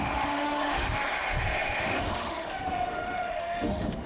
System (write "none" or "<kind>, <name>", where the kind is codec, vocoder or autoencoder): autoencoder, DAC-VAE